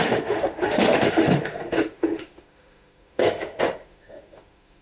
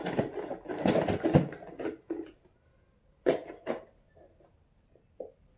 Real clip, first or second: second